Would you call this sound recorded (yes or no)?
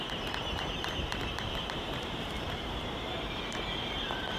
no